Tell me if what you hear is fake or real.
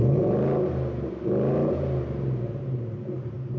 real